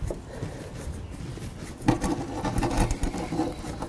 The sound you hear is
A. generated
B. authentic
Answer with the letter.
B